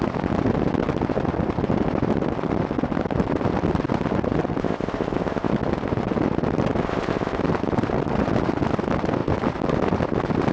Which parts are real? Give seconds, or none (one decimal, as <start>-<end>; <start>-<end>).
0.0-4.6; 5.5-6.8; 7.4-10.5